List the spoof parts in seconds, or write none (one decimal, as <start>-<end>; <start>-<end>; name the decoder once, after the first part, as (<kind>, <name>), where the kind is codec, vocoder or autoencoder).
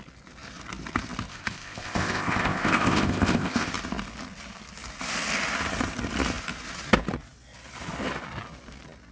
1.3-3.7 (codec, ZipCodec)